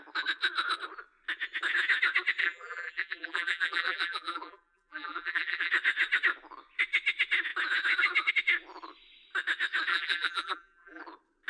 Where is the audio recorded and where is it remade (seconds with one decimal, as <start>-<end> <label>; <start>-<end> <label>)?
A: 0.0-2.4 recorded; 2.4-5.7 remade; 5.7-9.9 recorded; 9.9-11.0 remade; 11.0-11.5 recorded